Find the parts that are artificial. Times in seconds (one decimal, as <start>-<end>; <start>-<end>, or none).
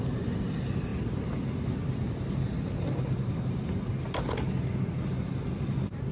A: none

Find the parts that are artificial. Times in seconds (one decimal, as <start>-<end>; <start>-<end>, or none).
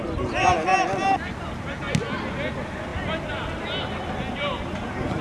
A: none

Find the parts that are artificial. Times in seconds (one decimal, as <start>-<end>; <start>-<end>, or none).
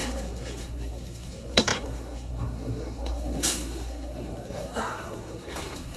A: 0.0-6.0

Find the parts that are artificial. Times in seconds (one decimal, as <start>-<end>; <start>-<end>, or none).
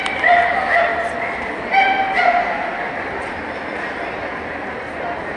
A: none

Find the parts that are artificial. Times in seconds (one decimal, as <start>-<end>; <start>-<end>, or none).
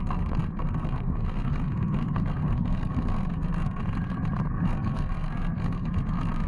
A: 0.0-3.8; 4.5-6.5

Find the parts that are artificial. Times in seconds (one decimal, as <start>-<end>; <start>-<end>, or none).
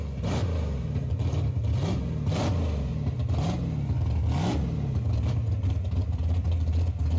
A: none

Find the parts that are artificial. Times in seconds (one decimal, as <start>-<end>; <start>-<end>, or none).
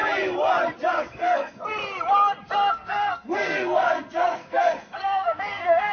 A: 0.9-1.8; 2.7-5.9